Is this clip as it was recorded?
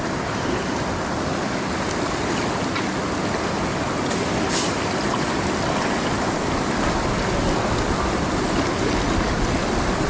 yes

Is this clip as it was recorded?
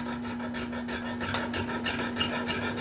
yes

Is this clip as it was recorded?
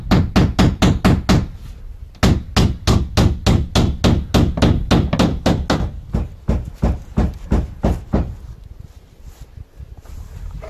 yes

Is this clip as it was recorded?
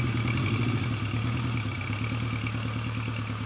yes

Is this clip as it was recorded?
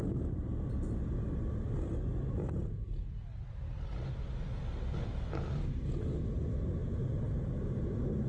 yes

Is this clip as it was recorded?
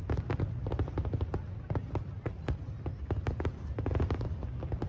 yes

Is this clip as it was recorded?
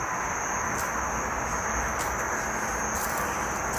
yes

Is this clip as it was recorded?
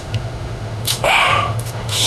no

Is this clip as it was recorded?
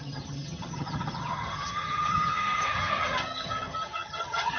no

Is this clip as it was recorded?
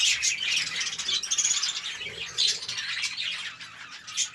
yes